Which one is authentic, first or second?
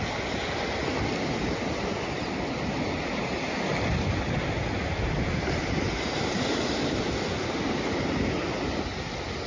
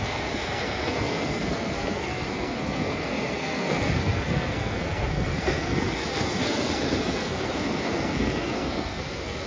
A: first